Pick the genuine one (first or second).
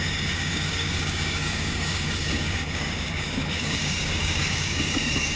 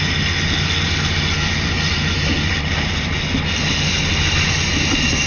second